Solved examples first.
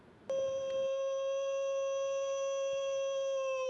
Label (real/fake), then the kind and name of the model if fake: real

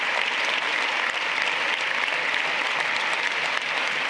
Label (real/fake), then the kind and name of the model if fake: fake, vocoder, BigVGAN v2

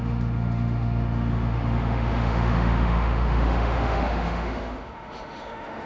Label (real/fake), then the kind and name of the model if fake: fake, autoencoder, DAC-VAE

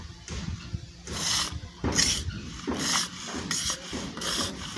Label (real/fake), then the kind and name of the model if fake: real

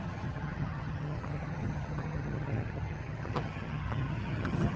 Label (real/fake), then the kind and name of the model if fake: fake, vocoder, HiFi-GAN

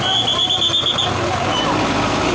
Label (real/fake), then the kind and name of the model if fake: real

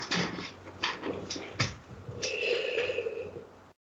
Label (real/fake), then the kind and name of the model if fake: fake, vocoder, BigVGAN v2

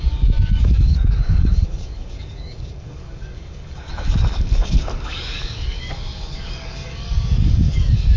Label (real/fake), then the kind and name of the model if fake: fake, codec, DAC